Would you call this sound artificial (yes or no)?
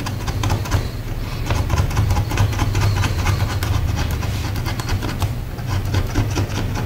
no